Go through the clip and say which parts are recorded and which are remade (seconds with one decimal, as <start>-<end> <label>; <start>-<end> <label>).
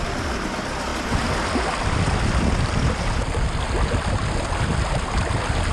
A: 0.0-5.7 recorded